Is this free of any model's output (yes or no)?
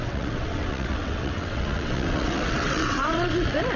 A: no